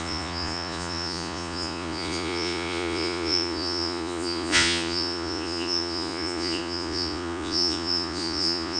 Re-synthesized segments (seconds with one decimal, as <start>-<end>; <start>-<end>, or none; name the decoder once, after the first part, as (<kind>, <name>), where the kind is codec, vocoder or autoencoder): 0.0-8.8 (vocoder, Vocos)